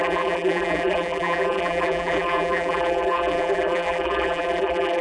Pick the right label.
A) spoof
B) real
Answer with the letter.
A